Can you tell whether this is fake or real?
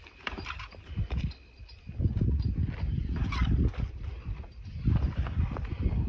real